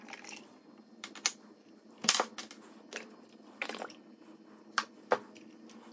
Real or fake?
real